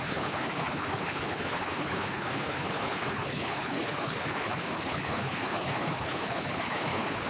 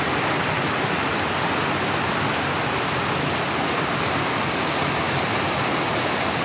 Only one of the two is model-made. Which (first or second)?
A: first